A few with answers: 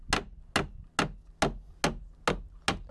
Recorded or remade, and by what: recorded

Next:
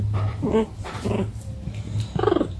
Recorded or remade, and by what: recorded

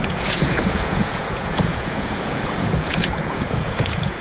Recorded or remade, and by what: remade, vocoder, Vocos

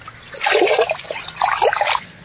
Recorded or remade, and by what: recorded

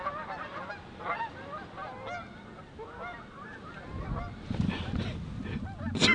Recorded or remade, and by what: recorded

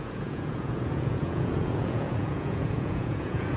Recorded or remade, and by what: remade, vocoder, Vocos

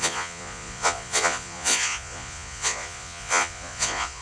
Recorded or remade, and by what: remade, vocoder, Vocos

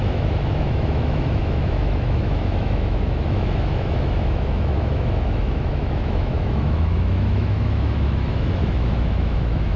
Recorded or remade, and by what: remade, autoencoder, DAC-VAE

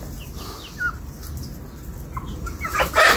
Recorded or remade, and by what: recorded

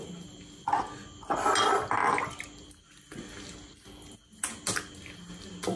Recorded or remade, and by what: recorded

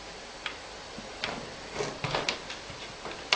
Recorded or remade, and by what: recorded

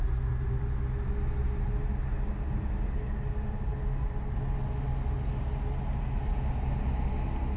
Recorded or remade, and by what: recorded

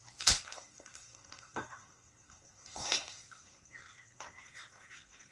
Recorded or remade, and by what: remade, codec, SNAC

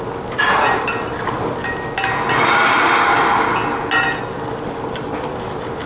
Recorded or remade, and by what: recorded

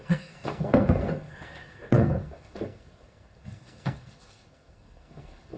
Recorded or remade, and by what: remade, codec, SNAC